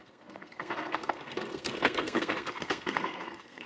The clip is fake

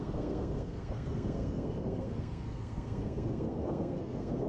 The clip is fake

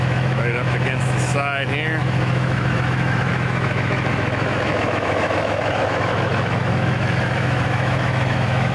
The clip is fake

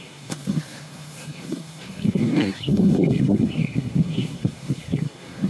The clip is fake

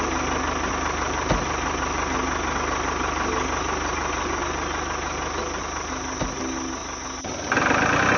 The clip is real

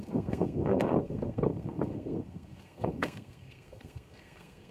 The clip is fake